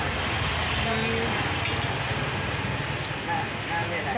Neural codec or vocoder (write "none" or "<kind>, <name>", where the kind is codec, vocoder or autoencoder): none